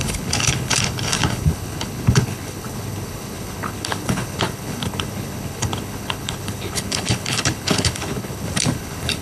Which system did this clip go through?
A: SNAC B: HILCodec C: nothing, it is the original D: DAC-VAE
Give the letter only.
B